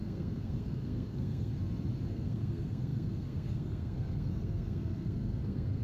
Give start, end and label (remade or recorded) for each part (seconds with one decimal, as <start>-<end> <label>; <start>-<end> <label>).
0.0-1.5 remade; 1.5-2.1 recorded; 2.1-5.8 remade